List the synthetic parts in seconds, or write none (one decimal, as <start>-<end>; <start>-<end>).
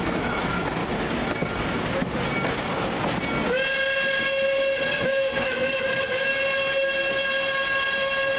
0.0-0.8; 5.0-6.3